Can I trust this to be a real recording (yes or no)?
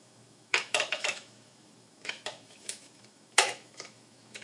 no